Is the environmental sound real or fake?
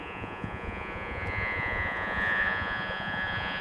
fake